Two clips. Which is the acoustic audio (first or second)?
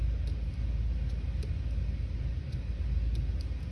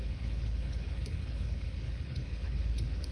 first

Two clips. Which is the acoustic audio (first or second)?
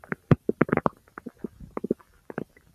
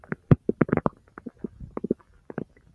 second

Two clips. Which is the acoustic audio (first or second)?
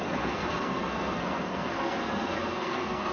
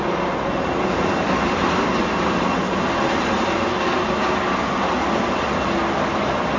second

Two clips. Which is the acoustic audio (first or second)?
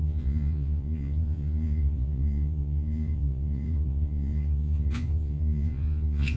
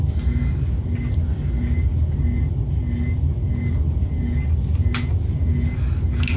second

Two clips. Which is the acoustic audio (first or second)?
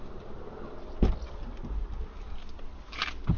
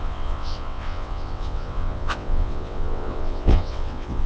first